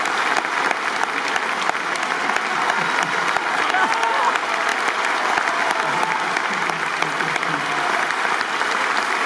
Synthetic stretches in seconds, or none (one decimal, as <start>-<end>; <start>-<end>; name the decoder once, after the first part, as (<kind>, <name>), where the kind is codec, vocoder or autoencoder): none